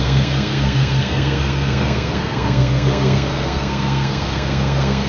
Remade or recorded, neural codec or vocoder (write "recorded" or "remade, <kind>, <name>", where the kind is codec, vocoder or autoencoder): remade, codec, SNAC